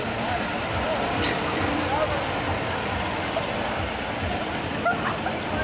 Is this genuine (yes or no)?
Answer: yes